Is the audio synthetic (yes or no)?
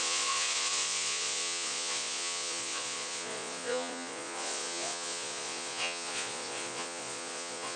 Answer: yes